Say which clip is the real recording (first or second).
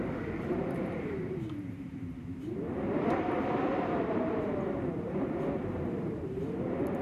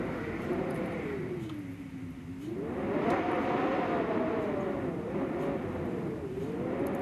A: second